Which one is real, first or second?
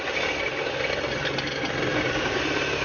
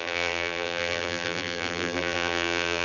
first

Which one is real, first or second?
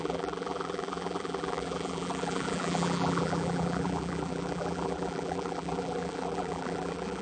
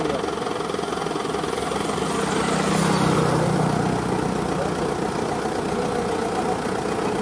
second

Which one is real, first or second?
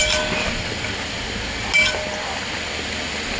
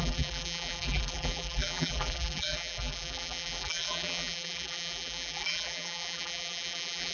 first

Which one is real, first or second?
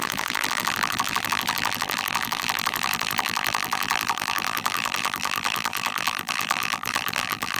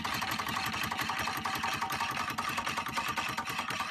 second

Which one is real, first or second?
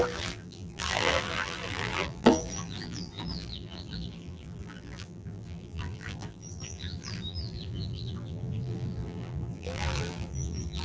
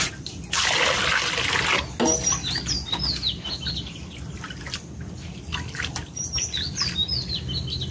second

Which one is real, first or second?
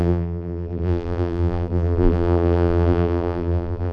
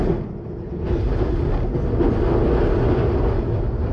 second